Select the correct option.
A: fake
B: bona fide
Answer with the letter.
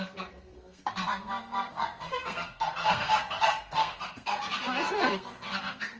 A